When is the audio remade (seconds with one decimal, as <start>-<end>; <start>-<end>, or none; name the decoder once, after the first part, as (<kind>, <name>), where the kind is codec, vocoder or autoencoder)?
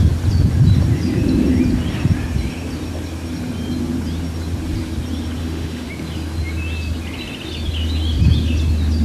5.4-5.9 (autoencoder, DAC-VAE)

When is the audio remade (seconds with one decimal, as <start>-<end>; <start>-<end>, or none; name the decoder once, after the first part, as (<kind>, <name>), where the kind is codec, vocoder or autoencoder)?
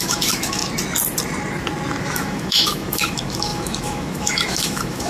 0.0-0.6 (autoencoder, DAC-VAE); 2.0-5.1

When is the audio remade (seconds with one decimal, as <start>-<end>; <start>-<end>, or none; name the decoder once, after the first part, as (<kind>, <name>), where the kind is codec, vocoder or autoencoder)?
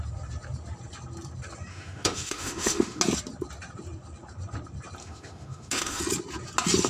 1.7-3.0 (autoencoder, DAC-VAE); 5.0-6.0